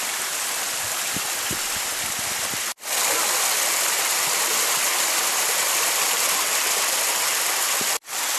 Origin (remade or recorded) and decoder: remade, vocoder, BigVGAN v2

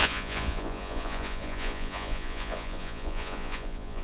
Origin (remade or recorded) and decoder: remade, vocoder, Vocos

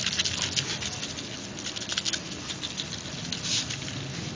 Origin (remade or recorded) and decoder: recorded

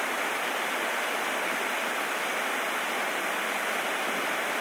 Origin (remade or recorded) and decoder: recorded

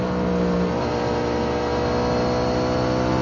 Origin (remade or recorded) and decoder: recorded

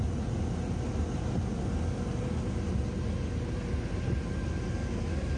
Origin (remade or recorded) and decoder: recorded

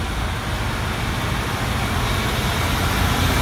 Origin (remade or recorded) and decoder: recorded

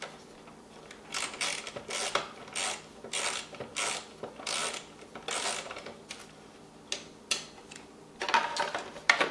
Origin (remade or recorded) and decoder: recorded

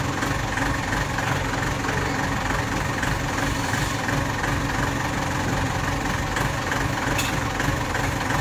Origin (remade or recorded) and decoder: recorded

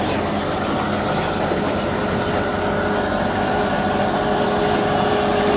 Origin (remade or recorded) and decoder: recorded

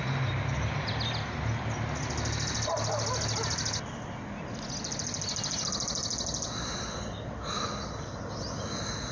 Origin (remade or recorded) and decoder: recorded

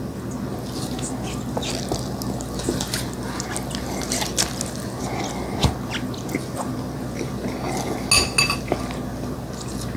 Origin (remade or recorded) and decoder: recorded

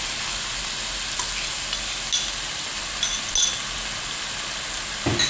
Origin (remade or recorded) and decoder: recorded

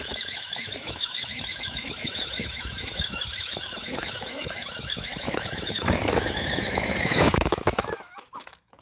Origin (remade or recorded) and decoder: remade, autoencoder, DAC-VAE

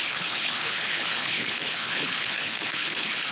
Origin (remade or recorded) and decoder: remade, codec, HILCodec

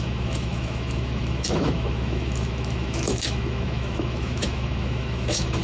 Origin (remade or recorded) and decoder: remade, autoencoder, DAC-VAE